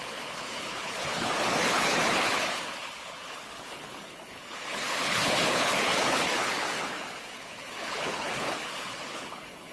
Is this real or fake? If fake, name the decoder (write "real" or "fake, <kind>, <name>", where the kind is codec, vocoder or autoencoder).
fake, codec, HILCodec